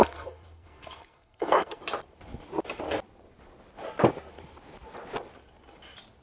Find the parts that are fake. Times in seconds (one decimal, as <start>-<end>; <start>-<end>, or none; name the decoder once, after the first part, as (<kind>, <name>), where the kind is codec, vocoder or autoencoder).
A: 0.0-1.8 (codec, SNAC)